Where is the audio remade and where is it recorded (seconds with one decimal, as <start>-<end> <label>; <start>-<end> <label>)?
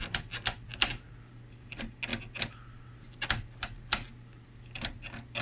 0.0-5.4 recorded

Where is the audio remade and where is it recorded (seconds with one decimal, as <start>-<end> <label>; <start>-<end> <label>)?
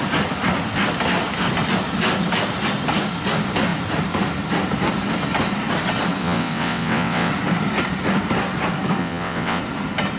0.0-6.2 recorded; 6.2-7.3 remade; 7.3-9.0 recorded; 9.0-9.6 remade; 9.6-10.2 recorded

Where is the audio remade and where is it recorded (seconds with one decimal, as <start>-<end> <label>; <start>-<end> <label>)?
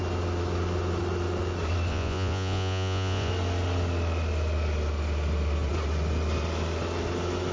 0.0-1.9 recorded; 1.9-3.3 remade; 3.3-7.5 recorded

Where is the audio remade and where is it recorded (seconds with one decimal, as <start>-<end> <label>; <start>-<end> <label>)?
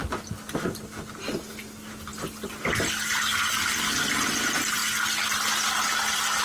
0.0-6.4 recorded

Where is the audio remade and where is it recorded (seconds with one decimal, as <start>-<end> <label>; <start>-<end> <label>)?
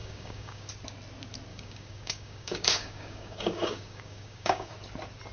0.0-0.7 remade; 0.7-1.5 recorded; 1.5-4.7 remade; 4.7-5.3 recorded